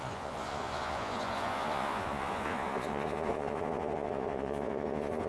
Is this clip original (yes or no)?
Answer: no